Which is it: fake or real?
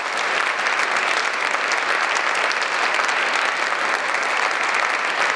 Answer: real